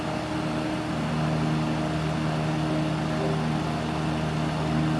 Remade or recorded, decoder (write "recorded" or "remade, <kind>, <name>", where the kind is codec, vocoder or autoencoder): recorded